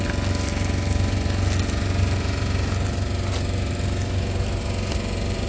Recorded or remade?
recorded